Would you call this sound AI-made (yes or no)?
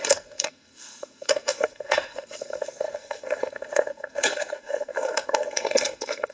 yes